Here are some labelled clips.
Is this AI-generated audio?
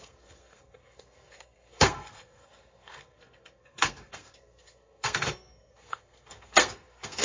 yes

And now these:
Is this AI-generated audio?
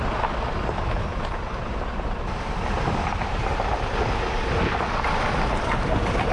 no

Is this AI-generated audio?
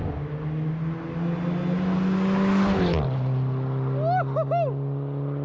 no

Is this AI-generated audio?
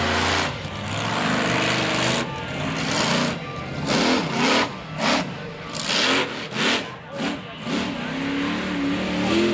no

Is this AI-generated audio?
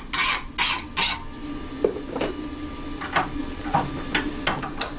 no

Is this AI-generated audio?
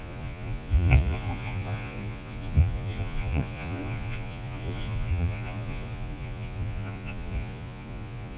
yes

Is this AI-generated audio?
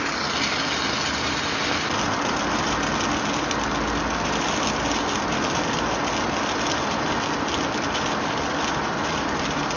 no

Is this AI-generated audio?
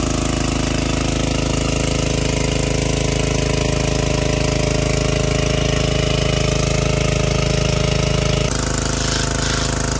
no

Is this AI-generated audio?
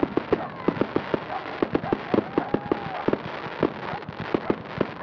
no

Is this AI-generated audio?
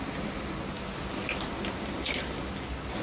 no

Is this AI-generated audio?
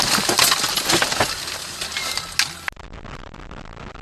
no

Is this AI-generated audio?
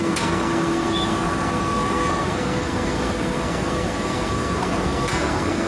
yes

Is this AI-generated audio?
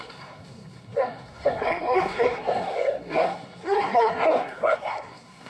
yes